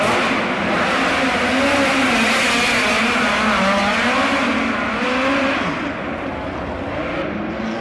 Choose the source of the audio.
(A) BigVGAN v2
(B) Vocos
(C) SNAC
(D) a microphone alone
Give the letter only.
D